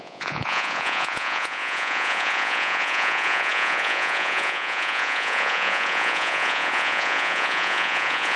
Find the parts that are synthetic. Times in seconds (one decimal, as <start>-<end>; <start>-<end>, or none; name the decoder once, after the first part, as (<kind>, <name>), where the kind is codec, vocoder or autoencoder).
0.0-8.4 (vocoder, Vocos)